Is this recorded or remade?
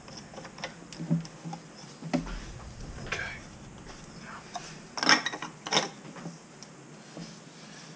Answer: recorded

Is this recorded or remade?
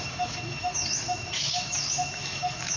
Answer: remade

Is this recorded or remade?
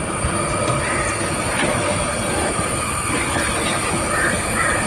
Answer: recorded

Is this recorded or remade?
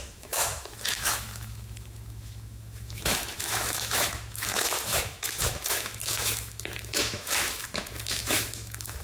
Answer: remade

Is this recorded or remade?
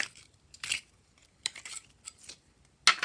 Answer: recorded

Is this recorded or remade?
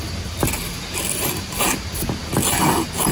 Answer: recorded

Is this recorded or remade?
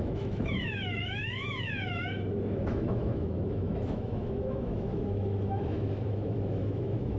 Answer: remade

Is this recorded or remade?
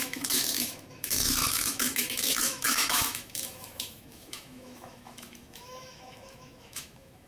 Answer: remade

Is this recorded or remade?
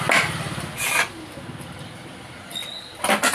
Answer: recorded